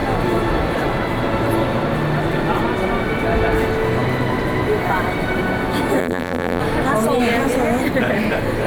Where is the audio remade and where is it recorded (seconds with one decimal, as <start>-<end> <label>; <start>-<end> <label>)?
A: 0.0-6.0 recorded; 6.0-6.6 remade; 6.6-8.7 recorded